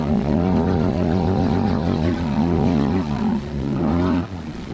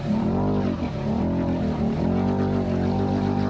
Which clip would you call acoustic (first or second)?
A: second